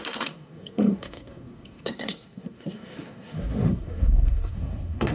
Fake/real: fake